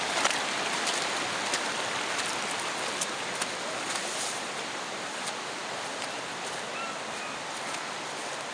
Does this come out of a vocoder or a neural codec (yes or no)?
no